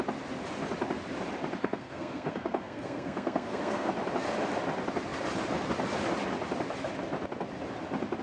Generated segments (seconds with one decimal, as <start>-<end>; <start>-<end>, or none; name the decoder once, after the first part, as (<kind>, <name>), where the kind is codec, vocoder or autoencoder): 1.6-3.9 (codec, SNAC)